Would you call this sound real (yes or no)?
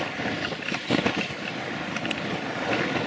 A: yes